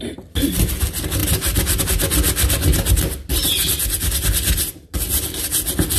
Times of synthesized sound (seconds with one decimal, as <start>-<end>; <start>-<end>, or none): none